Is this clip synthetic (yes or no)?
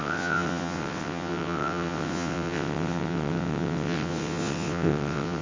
yes